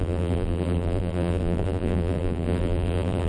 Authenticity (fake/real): fake